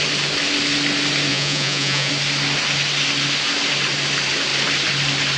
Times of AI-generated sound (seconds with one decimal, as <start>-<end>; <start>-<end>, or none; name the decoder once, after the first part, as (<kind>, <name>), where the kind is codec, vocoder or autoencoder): 1.3-2.1 (vocoder, Vocos)